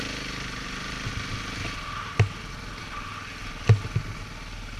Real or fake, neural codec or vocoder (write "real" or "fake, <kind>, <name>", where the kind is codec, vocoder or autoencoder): real